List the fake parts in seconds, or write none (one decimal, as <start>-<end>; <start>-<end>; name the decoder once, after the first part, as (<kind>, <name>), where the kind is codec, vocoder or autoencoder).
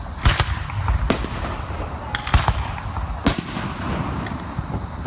none